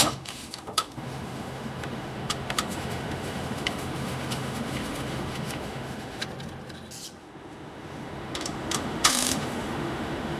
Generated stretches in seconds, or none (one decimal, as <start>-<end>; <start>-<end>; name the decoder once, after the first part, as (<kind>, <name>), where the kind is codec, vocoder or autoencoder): 0.0-6.2 (autoencoder, DAC-VAE); 7.2-10.4